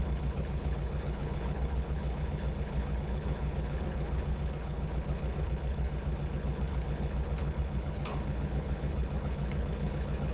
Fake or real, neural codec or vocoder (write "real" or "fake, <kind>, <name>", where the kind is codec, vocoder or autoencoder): fake, codec, HILCodec